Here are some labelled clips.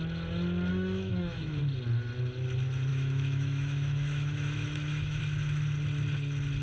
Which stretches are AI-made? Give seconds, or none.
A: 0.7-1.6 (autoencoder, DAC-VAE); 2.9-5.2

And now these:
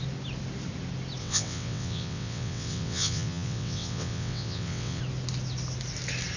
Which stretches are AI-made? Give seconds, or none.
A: 1.2-5.0 (vocoder, WaveNeXt)

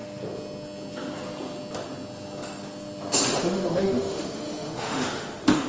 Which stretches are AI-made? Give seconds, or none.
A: 3.4-5.7 (autoencoder, DAC-VAE)

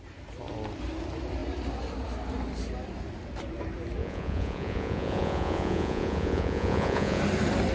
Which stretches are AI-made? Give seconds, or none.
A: 4.0-7.2 (vocoder, Vocos)

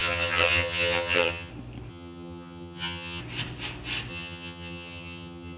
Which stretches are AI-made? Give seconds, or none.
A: 0.0-1.5 (vocoder, HiFi-GAN); 1.9-3.2; 4.1-5.6

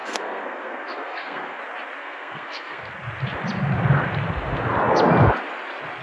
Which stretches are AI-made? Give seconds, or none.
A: 0.0-1.6 (codec, SNAC); 2.0-2.9

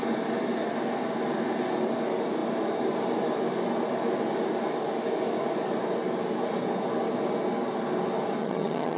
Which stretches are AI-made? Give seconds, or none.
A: 8.4-9.0 (vocoder, HiFi-GAN)

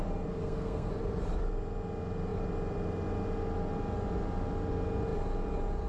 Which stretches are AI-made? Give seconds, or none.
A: 0.4-0.9 (codec, SNAC)